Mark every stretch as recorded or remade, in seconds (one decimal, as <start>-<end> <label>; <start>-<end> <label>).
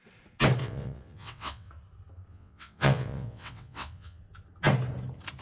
0.0-0.6 recorded; 0.6-1.7 remade; 1.7-2.3 recorded; 2.3-4.2 remade; 4.2-5.4 recorded